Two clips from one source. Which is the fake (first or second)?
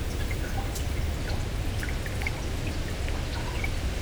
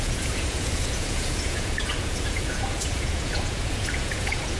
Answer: second